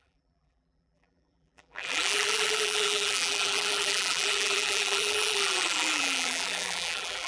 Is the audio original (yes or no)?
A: no